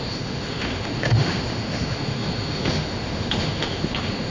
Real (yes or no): no